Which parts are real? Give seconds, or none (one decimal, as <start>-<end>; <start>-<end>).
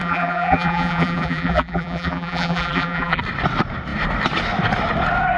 3.2-5.4